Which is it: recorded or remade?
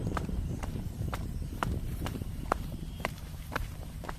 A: remade